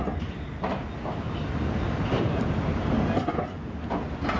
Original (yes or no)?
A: yes